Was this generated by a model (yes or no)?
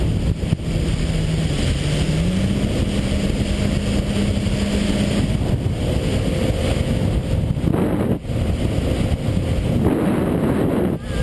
no